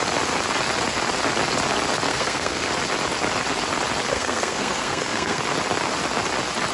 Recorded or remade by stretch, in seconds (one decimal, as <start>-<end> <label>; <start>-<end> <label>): 0.0-2.1 recorded; 2.1-2.7 remade; 2.7-4.1 recorded; 4.1-5.4 remade; 5.4-6.7 recorded